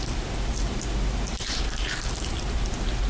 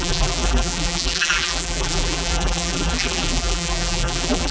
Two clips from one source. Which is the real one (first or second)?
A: first